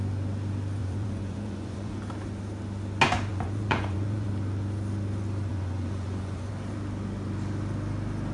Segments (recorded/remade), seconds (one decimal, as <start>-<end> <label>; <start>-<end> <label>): 0.0-0.8 recorded; 0.8-2.0 remade; 2.0-3.3 recorded; 3.3-4.3 remade; 4.3-5.5 recorded; 5.5-6.5 remade; 6.5-8.3 recorded